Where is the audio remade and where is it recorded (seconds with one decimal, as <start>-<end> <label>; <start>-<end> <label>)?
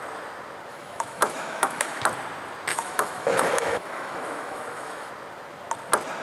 0.0-0.7 recorded; 0.7-2.0 remade; 2.0-2.7 recorded; 2.7-5.1 remade; 5.1-6.2 recorded